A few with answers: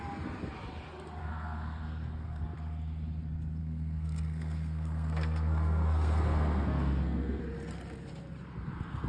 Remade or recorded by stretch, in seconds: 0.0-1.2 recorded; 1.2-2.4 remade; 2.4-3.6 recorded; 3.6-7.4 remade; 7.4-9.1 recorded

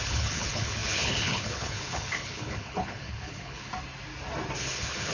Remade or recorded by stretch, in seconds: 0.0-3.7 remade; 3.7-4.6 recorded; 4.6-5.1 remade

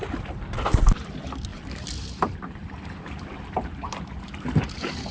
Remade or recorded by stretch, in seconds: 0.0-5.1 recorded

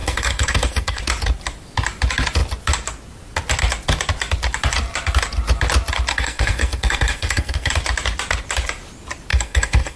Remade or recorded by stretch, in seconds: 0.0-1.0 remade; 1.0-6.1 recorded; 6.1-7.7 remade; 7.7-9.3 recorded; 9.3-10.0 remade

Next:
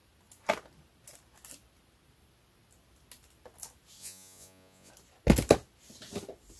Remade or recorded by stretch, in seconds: 0.0-4.0 recorded; 4.0-4.9 remade; 4.9-6.6 recorded

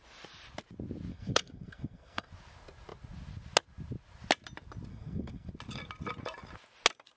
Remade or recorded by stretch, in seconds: 0.0-1.1 recorded; 1.1-2.3 remade; 2.3-4.9 recorded; 4.9-5.5 remade; 5.5-7.2 recorded

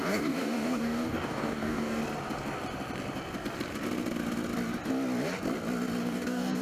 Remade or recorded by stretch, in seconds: 0.0-2.0 remade; 2.0-6.0 recorded; 6.0-6.6 remade